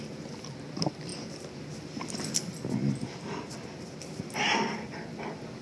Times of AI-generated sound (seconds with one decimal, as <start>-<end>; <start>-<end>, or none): none